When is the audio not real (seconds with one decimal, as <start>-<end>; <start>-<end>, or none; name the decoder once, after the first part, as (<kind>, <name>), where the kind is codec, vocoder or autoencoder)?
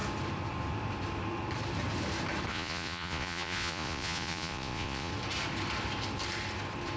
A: 2.5-5.1 (vocoder, Vocos)